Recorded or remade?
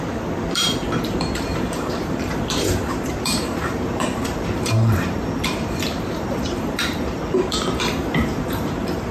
remade